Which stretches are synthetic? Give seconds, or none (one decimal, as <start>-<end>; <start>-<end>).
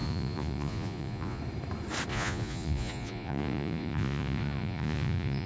0.0-1.4; 2.1-5.5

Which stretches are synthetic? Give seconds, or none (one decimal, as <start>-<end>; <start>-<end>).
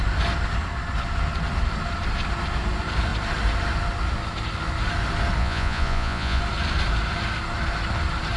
5.4-6.4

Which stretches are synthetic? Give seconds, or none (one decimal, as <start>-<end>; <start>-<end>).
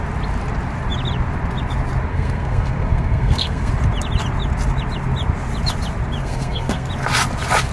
2.1-3.7; 6.2-6.9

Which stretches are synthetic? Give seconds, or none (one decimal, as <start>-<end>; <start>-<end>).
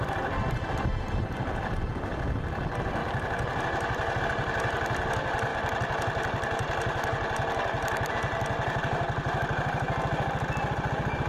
none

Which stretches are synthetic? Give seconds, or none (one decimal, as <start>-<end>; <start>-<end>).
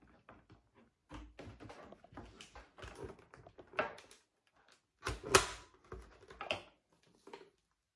none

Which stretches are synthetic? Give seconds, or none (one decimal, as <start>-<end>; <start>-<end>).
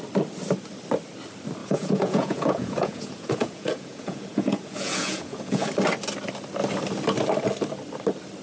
1.6-5.7